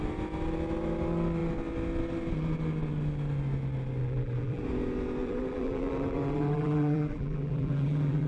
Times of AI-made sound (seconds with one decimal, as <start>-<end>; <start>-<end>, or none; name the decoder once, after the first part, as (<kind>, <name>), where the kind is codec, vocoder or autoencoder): 4.0-4.6 (vocoder, BigVGAN v2); 5.2-8.3